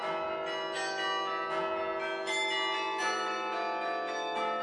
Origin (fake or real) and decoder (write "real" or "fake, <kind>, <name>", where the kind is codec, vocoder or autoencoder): real